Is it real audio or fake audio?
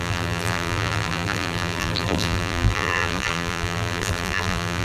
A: fake